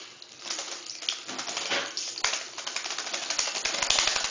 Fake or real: real